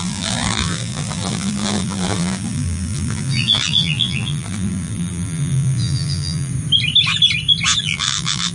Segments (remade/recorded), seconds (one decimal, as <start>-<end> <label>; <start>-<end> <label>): 0.0-6.5 remade; 6.5-7.8 recorded; 7.8-8.5 remade